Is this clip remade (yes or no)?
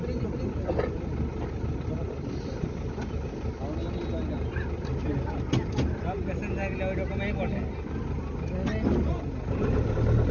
no